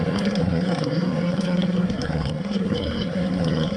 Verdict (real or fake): fake